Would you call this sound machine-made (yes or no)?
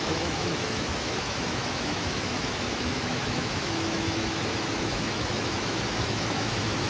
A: yes